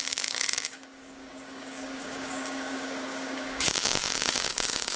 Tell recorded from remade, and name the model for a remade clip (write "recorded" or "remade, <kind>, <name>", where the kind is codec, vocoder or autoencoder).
remade, codec, DAC